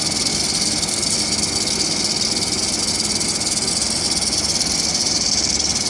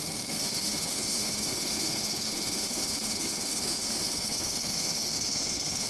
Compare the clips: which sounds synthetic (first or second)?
second